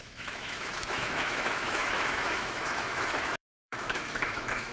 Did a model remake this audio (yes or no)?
yes